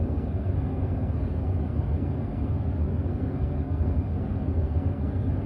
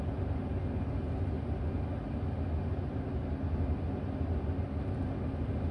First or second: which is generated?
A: first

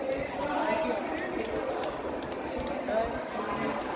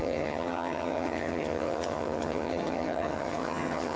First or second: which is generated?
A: second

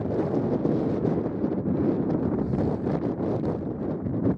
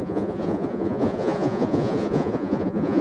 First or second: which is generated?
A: second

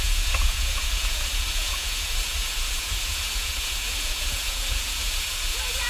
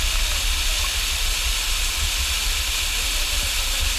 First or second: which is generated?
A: first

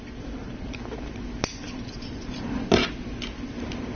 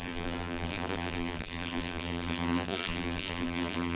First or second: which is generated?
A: second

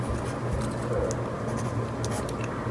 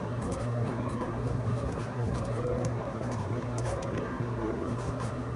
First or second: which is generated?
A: second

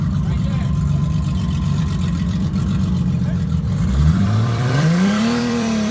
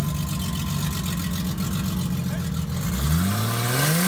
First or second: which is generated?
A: first